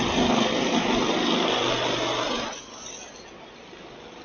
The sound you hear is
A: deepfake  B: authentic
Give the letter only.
B